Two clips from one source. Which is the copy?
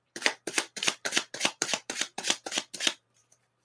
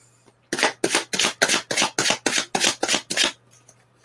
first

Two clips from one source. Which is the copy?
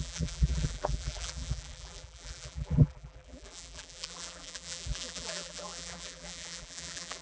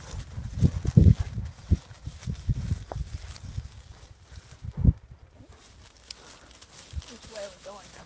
first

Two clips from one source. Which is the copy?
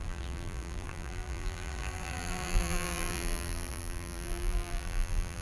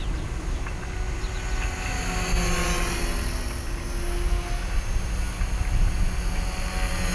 first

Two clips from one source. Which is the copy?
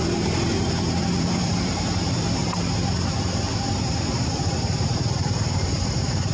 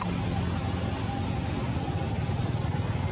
first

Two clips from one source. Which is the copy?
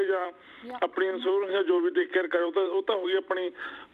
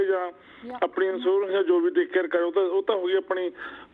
first